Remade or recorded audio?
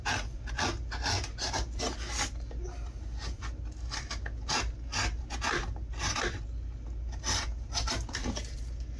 recorded